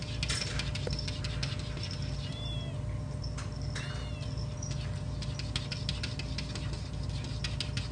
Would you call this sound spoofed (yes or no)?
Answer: no